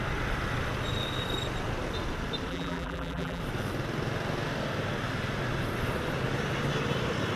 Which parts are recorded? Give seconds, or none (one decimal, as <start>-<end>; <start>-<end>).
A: 0.0-2.5; 3.4-7.4